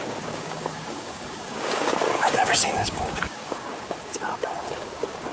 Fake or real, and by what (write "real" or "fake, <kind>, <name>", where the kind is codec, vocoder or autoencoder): fake, codec, DAC